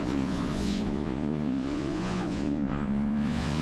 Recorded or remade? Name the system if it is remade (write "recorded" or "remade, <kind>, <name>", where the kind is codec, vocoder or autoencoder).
remade, vocoder, Vocos